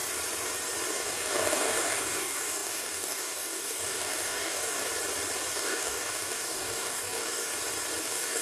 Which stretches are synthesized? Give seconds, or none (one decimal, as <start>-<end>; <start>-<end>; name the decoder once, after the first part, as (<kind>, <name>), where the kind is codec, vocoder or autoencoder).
0.9-4.9 (codec, DAC); 5.5-7.5; 8.0-8.4